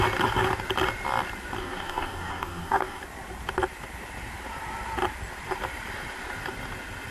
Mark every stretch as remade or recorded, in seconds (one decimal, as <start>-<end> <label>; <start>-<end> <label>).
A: 0.0-1.6 recorded; 1.6-3.0 remade; 3.0-7.1 recorded